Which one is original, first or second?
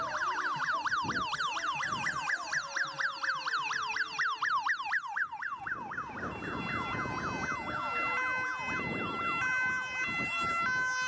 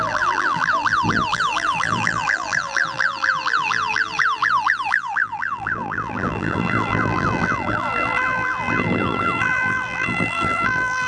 first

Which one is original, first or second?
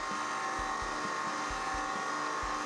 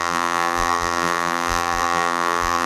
first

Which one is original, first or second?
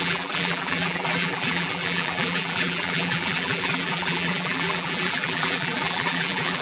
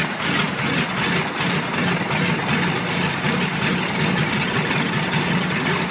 second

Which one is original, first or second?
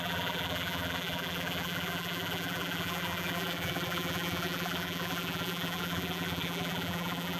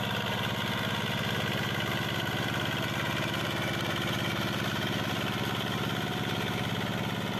second